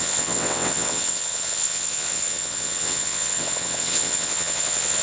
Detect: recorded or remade remade